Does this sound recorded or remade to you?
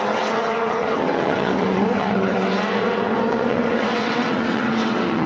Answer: remade